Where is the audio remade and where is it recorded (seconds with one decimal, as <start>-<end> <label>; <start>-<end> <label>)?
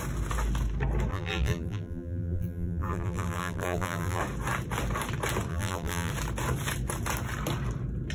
0.0-1.1 recorded; 1.1-4.2 remade; 4.2-5.5 recorded; 5.5-6.1 remade; 6.1-8.1 recorded